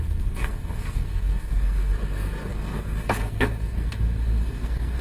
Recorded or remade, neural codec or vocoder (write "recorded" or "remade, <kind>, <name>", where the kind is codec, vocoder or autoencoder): remade, codec, SNAC